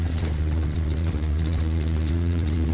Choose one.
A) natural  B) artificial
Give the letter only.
B